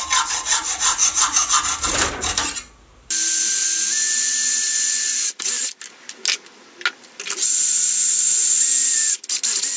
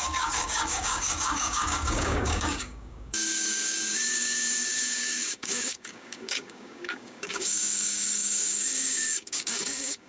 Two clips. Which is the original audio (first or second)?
first